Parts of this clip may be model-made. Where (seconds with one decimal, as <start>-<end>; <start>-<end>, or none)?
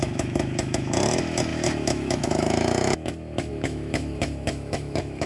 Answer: 0.0-5.3